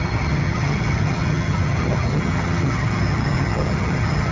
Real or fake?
fake